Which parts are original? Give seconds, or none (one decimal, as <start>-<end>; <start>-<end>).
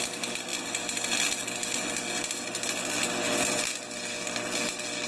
0.0-5.1